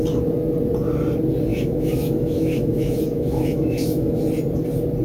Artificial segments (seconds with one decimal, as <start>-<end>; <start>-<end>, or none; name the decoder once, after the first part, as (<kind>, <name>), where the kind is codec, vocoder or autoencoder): 1.5-4.2 (autoencoder, DAC-VAE)